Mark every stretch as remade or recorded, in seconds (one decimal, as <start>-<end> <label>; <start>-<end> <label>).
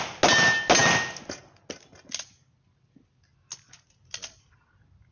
0.0-5.1 recorded